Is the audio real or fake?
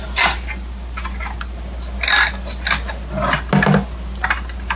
real